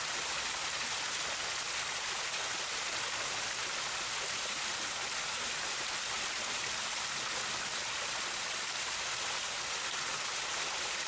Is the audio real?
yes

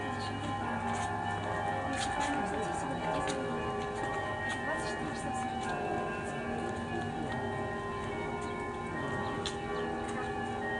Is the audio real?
yes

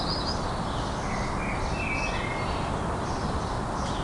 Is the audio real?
yes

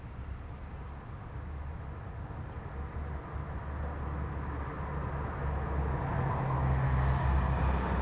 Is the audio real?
yes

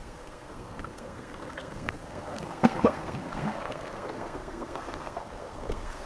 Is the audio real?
no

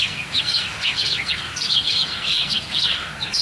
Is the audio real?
no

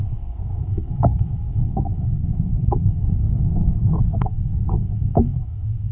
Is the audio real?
no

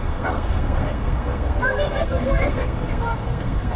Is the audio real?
no